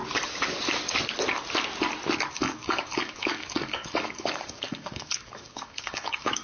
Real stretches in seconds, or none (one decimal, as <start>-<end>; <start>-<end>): 0.0-2.3